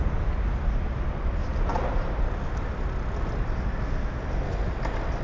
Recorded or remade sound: recorded